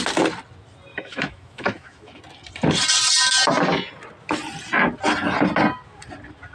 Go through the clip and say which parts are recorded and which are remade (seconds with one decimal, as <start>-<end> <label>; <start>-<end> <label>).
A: 0.0-0.9 recorded; 0.9-2.2 remade; 2.2-6.5 recorded